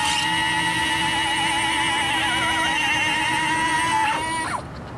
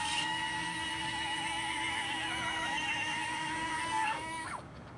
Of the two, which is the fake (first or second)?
second